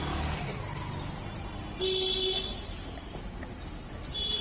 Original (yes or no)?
yes